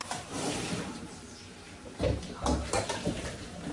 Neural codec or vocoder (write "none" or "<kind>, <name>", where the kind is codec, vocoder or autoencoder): vocoder, BigVGAN v2